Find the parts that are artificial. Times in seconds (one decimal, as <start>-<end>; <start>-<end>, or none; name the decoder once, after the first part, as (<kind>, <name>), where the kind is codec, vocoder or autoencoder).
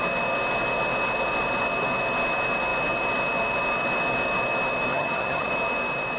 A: 4.9-5.5 (vocoder, HiFi-GAN)